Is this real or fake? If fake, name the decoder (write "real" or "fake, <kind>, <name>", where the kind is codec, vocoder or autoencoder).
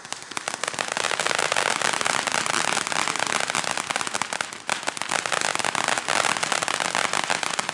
real